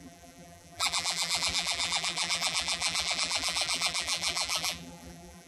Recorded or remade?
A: remade